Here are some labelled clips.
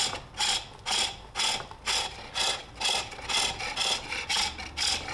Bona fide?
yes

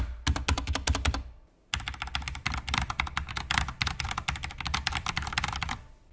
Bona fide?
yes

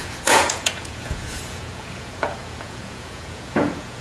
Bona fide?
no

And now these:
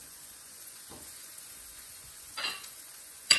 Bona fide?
no